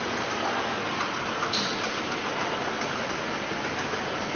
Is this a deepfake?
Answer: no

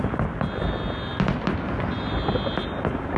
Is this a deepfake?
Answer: no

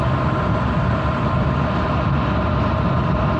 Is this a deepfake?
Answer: yes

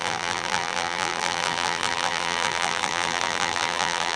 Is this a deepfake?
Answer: yes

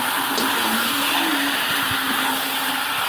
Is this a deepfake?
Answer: no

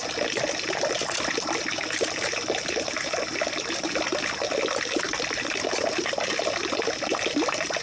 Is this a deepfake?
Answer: no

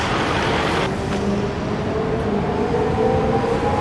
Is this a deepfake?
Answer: no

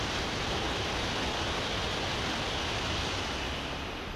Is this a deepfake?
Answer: no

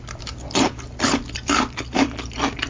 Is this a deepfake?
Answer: yes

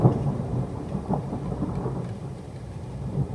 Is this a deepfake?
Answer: yes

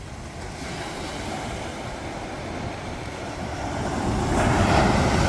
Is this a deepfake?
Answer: no